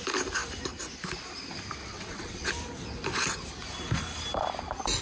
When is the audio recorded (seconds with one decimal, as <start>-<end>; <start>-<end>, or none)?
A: 0.0-1.8; 2.5-5.0